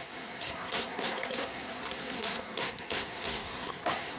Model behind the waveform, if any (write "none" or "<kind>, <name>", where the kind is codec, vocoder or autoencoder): codec, SNAC